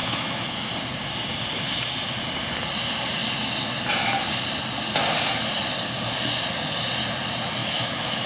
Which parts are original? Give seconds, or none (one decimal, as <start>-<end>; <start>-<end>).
0.7-7.6

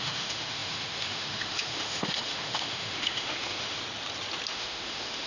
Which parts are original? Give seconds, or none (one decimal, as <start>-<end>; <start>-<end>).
3.8-4.5

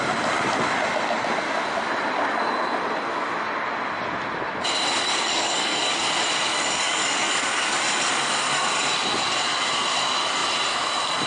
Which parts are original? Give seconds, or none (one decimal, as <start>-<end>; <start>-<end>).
0.0-5.0; 6.1-6.5; 7.8-11.3